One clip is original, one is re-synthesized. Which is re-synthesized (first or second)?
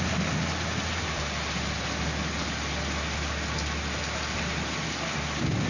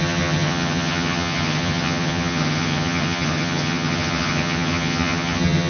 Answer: second